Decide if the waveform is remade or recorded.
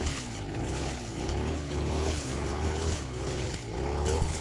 remade